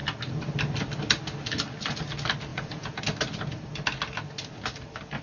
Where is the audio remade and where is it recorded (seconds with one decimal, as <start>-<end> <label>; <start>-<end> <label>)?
0.0-2.5 recorded; 2.5-3.0 remade; 3.0-5.2 recorded